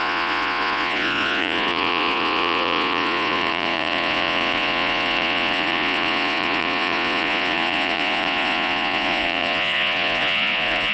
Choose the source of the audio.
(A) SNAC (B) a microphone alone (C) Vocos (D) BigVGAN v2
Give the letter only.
C